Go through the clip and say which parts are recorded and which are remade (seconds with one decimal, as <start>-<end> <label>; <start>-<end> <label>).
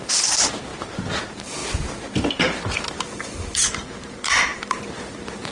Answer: 0.0-5.5 remade